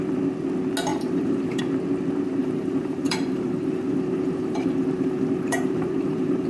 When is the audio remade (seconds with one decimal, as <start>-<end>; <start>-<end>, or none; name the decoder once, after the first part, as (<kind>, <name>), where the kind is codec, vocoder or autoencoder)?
0.9-1.6 (vocoder, BigVGAN v2); 2.4-6.5